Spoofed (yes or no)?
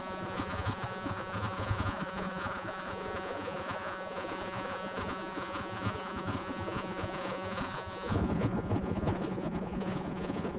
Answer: yes